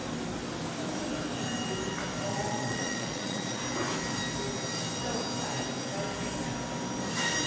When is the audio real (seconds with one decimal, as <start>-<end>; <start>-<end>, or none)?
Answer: 0.0-2.3; 3.6-7.5